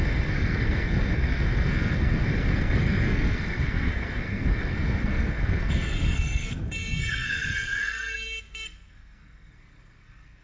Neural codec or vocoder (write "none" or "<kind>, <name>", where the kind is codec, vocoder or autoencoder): codec, SNAC